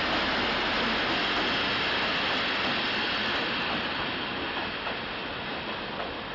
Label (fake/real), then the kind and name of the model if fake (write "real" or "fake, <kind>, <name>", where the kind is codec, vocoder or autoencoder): real